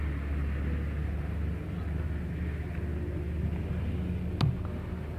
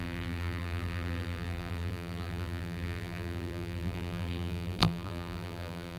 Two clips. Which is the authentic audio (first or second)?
first